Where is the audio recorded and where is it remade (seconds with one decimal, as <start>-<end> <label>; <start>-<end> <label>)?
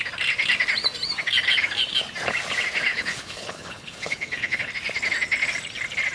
0.0-2.9 recorded; 2.9-4.7 remade; 4.7-6.1 recorded